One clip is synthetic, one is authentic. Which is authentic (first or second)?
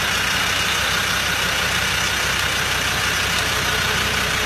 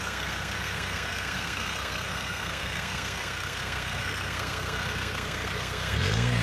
first